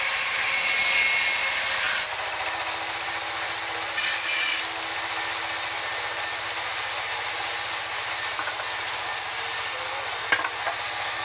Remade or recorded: recorded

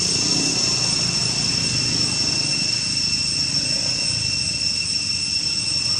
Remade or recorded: recorded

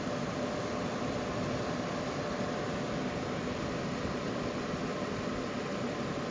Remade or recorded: recorded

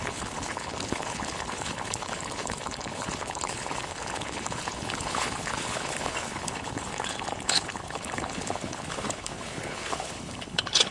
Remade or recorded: remade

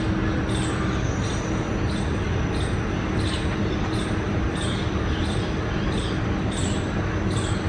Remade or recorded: recorded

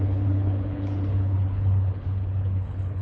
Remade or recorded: remade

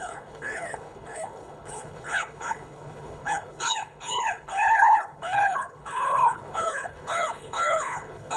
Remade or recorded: remade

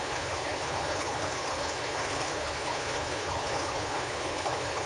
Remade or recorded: remade